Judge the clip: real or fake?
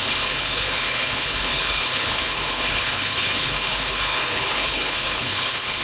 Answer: fake